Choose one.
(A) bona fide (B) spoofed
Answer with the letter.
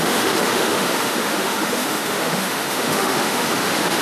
B